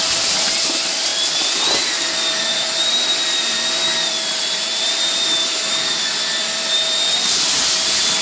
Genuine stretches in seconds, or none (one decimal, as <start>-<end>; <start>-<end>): none